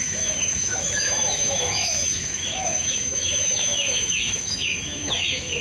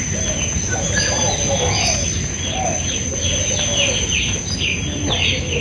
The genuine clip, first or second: second